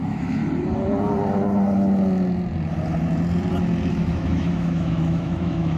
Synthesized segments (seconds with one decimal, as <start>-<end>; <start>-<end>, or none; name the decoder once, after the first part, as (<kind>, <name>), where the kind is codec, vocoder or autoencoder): 0.0-0.4 (autoencoder, DAC-VAE); 3.9-5.8